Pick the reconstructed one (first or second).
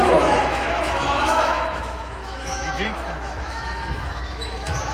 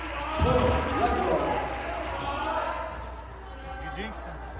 first